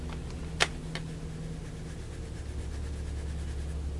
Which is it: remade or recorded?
recorded